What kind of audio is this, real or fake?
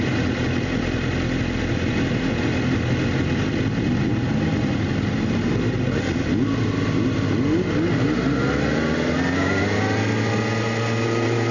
real